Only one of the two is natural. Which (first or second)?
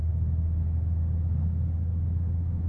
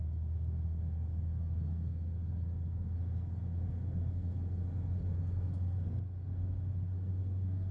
first